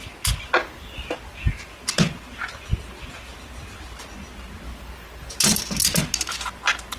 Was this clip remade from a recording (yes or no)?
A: no